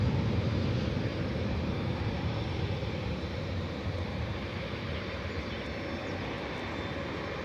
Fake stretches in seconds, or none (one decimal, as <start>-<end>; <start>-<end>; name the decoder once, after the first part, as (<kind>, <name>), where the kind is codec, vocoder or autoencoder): 1.1-5.5 (vocoder, BigVGAN v2)